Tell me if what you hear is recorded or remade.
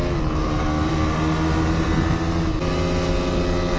recorded